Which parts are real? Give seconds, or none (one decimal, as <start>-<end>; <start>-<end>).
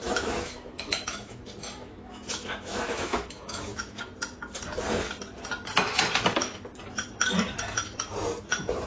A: 1.4-1.8; 4.0-8.9